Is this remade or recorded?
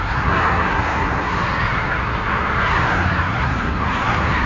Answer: remade